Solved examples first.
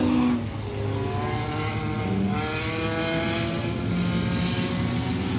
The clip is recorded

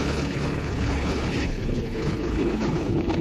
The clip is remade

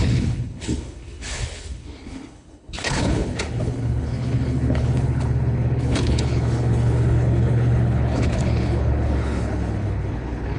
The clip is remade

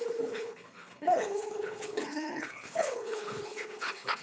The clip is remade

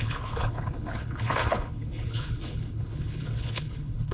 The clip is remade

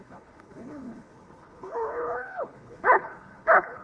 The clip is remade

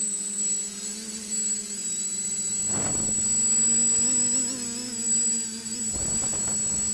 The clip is recorded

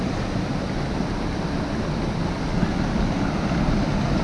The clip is recorded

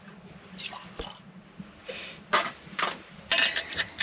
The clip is recorded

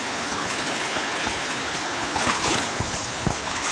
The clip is remade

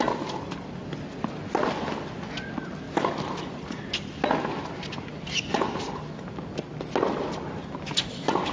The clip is recorded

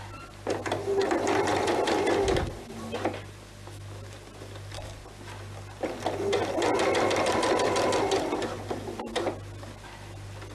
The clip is recorded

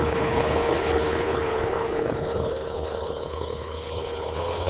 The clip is remade